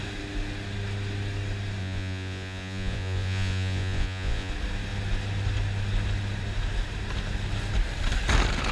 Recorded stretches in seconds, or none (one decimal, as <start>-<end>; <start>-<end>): 0.0-1.8; 4.5-8.7